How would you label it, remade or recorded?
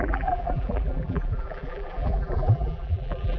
remade